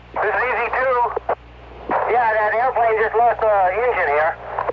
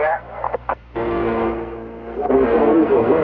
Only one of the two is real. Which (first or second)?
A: first